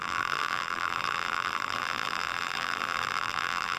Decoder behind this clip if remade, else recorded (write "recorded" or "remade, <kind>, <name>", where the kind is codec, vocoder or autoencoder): remade, vocoder, BigVGAN v2